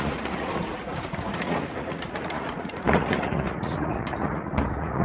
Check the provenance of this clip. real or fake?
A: fake